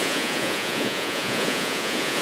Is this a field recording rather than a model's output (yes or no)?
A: no